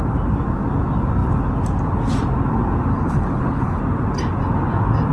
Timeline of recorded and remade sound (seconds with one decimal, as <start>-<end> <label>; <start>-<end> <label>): 0.0-2.9 recorded; 2.9-3.8 remade; 3.8-5.1 recorded